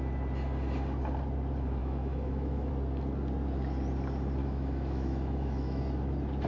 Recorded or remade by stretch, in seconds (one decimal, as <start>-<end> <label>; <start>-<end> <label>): 0.0-1.8 recorded; 1.8-2.7 remade; 2.7-4.4 recorded; 4.4-5.8 remade; 5.8-6.5 recorded

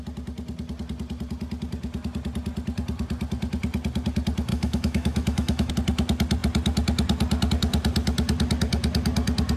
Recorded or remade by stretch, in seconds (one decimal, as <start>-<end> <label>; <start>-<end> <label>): 0.0-4.5 recorded; 4.5-5.7 remade; 5.7-9.6 recorded

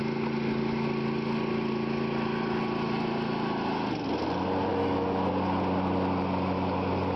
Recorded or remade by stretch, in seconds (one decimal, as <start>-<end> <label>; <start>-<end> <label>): 0.0-4.7 recorded; 4.7-5.3 remade; 5.3-7.2 recorded